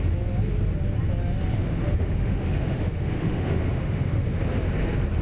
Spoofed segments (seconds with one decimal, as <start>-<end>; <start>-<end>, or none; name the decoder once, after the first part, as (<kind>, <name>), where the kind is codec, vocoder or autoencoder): 1.5-4.4 (autoencoder, DAC-VAE)